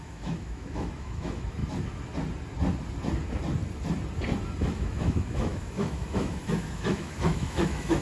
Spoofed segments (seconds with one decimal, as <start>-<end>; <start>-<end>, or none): 0.0-1.6; 4.6-8.0